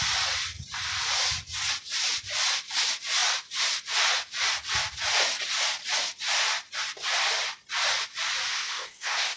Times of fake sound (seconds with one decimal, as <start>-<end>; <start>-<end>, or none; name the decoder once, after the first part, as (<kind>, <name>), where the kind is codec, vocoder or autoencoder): 8.5-9.4 (codec, ZipCodec)